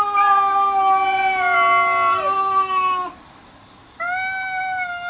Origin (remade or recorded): recorded